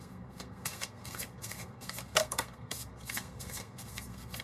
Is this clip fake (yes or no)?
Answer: yes